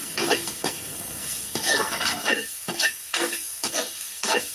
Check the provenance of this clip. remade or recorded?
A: remade